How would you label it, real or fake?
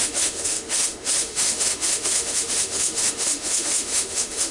fake